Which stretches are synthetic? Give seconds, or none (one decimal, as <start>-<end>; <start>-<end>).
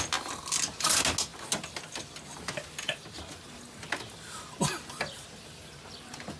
none